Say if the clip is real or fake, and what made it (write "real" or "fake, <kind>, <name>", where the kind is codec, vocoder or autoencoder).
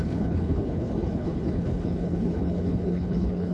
fake, codec, HILCodec